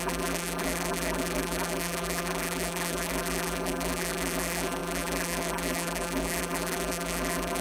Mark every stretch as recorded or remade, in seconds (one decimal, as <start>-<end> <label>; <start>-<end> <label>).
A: 0.0-7.6 remade